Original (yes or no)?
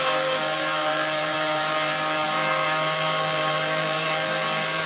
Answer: no